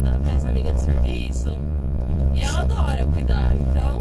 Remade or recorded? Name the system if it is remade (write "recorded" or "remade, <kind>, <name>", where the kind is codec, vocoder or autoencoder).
remade, vocoder, Vocos